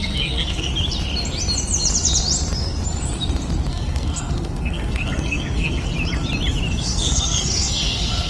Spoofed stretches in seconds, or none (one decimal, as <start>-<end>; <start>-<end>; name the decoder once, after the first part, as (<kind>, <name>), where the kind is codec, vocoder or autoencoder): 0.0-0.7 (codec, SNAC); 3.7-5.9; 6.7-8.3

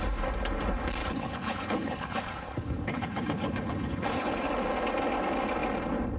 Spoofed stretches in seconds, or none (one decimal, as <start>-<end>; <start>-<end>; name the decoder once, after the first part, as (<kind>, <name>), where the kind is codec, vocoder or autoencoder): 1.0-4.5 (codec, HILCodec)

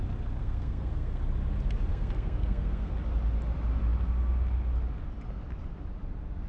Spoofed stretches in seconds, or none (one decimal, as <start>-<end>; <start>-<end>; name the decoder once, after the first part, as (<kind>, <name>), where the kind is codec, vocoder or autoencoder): 0.4-1.2 (codec, SNAC); 1.9-2.9

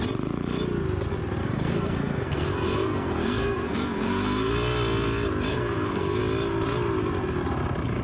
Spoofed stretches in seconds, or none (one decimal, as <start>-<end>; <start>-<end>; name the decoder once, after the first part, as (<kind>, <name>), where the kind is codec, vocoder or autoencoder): 1.4-4.5 (codec, SNAC); 5.5-6.2

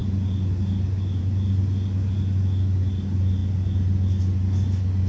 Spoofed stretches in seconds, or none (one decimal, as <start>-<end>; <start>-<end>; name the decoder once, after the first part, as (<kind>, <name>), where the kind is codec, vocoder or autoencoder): none